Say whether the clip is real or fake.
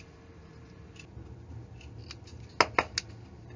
real